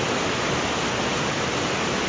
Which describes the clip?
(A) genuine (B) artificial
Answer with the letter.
A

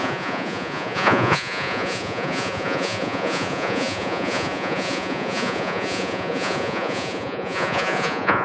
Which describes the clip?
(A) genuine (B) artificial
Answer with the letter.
B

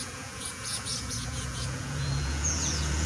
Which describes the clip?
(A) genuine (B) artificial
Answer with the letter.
B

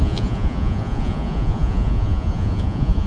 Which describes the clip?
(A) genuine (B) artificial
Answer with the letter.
B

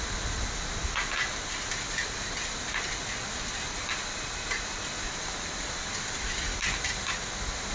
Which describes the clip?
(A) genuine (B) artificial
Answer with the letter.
A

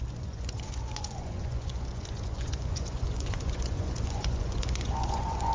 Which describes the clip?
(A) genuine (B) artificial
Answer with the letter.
B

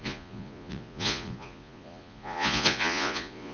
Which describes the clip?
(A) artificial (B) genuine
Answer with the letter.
A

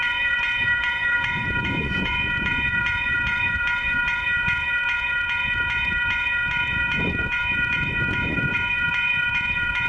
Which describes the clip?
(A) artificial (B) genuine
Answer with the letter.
A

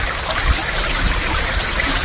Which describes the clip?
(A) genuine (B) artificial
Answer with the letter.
A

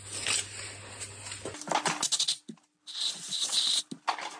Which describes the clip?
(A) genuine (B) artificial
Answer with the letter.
A